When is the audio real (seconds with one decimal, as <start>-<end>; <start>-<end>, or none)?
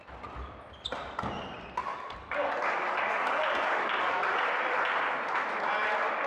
0.0-1.9; 4.5-6.3